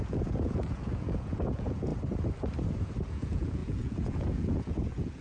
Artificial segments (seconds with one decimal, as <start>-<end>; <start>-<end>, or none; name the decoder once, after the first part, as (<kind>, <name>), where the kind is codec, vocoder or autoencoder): 0.0-1.9 (vocoder, Vocos); 3.1-5.2